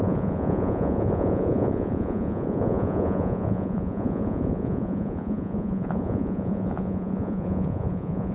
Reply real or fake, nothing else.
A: fake